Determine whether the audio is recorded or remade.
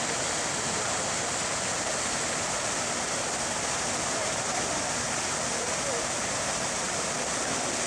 recorded